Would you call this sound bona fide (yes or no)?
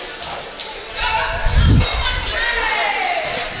yes